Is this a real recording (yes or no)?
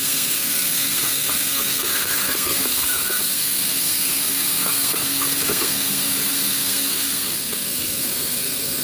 no